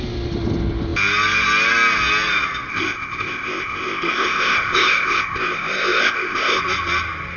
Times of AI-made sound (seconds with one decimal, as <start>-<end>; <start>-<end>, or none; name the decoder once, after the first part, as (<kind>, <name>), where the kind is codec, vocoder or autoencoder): 2.7-6.6 (codec, ZipCodec)